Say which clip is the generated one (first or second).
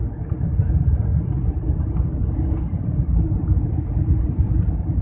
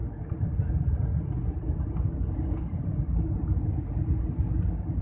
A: first